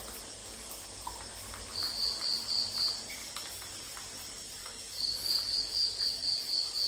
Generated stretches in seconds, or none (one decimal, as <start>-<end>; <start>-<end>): 3.2-3.7; 4.6-6.0